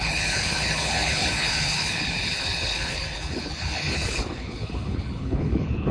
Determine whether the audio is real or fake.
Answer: fake